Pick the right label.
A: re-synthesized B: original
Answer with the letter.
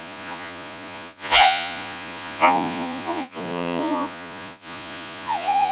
A